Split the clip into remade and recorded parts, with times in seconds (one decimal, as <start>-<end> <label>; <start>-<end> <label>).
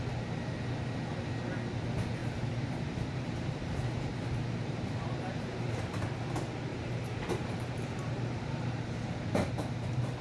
0.0-2.2 recorded; 2.2-5.7 remade; 5.7-6.7 recorded; 6.7-10.2 remade